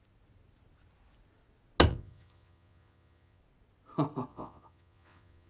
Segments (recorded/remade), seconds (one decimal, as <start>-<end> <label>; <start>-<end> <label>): 0.0-1.9 recorded; 1.9-3.4 remade; 3.4-4.3 recorded; 4.3-5.5 remade